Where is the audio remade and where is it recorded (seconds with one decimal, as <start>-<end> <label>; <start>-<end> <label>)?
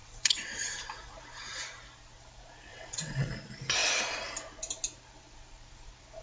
0.0-0.7 remade; 0.7-2.7 recorded; 2.7-3.3 remade; 3.3-6.2 recorded